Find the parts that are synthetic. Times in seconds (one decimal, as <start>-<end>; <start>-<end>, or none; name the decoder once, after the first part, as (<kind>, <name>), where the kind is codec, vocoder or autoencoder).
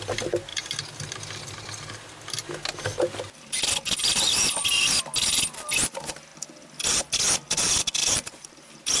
8.0-8.6 (vocoder, BigVGAN v2)